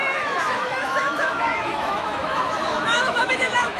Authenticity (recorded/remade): remade